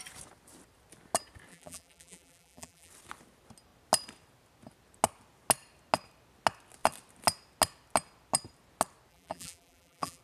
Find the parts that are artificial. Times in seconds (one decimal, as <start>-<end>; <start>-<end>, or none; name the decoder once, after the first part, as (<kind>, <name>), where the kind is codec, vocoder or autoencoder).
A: 1.5-2.9 (vocoder, BigVGAN v2); 9.1-10.2